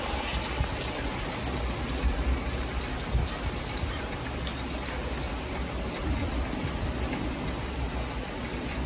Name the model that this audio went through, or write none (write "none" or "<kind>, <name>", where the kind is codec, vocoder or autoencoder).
none